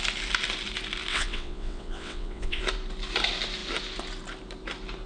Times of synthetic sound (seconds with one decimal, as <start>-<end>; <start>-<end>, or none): 1.1-2.6

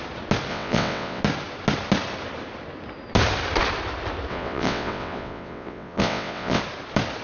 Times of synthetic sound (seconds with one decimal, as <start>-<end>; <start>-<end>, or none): 0.5-1.2; 4.3-6.6